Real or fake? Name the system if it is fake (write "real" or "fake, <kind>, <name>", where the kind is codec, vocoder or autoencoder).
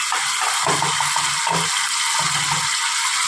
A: real